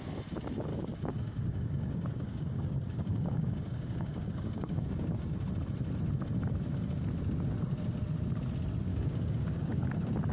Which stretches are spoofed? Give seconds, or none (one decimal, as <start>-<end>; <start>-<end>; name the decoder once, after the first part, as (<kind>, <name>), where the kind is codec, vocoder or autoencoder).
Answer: 0.7-5.3 (codec, DAC); 8.9-9.9